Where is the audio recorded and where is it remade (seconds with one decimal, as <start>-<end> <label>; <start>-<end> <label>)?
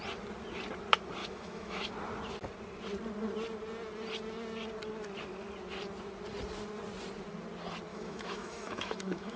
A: 0.0-1.2 recorded; 1.2-1.9 remade; 1.9-7.9 recorded; 7.9-9.4 remade